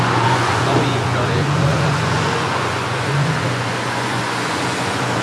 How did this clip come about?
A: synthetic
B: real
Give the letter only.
A